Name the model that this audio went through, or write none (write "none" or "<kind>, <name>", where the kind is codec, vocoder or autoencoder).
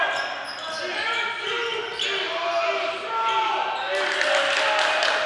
none